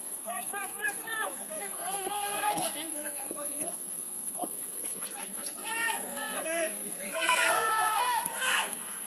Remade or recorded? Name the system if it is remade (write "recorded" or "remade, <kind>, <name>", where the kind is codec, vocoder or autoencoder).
remade, codec, SNAC